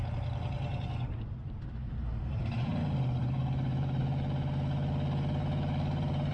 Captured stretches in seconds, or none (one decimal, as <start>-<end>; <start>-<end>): 0.0-1.8; 2.8-3.2; 4.0-6.3

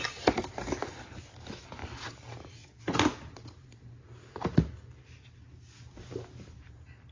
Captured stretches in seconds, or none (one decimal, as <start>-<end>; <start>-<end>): 0.0-7.1

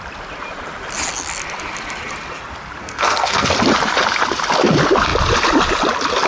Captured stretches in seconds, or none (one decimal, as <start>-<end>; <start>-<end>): 0.0-2.8; 3.5-6.3

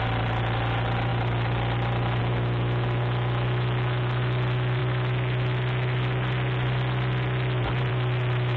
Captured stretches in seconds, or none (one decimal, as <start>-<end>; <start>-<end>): 0.0-8.6

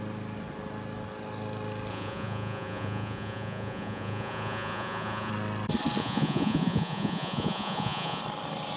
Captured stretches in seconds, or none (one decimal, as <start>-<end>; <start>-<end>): 0.0-1.9; 5.3-6.0; 8.2-8.8

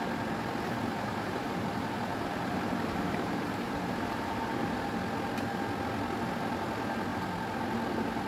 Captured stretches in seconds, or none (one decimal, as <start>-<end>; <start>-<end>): 0.0-0.9; 4.9-8.3